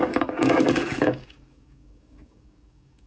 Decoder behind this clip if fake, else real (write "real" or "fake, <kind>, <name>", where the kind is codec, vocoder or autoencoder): fake, codec, DAC